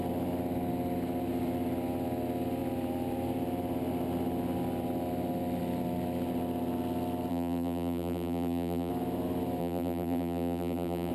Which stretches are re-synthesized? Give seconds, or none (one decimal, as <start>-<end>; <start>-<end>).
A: 7.3-8.9; 9.6-11.1